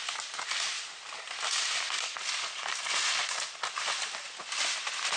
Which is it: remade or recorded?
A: recorded